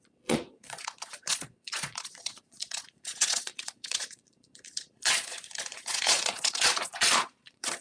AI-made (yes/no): yes